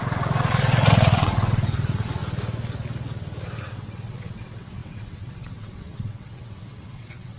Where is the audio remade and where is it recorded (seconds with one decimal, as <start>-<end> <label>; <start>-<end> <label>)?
0.0-2.2 remade; 2.2-3.6 recorded; 3.6-7.4 remade